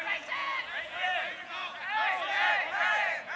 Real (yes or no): no